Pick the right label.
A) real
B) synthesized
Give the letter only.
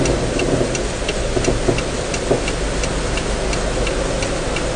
A